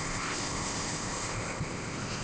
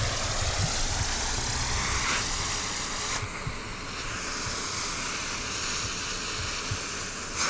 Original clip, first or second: second